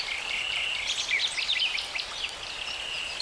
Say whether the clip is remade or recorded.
remade